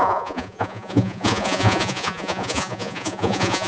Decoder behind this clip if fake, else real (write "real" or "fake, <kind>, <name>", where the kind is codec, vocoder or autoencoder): fake, vocoder, Vocos